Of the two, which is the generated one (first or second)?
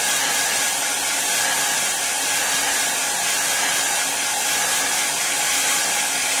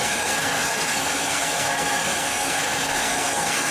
second